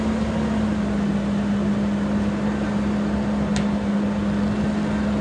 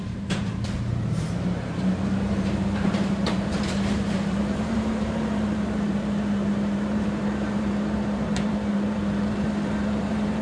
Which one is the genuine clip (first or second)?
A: first